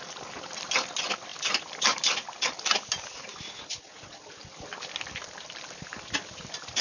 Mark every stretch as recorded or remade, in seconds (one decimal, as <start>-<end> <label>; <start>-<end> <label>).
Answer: 0.0-6.8 recorded